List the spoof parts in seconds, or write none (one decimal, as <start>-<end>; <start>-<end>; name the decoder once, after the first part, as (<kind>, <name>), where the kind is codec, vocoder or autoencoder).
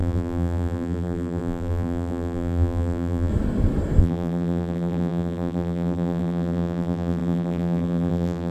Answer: 0.0-3.3 (vocoder, BigVGAN v2); 4.0-8.5